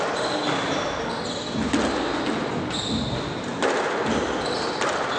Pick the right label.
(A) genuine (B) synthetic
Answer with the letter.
A